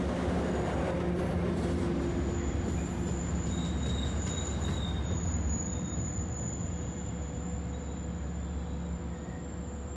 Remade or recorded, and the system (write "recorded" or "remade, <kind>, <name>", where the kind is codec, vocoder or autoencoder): recorded